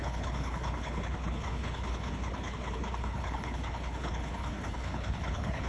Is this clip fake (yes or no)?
yes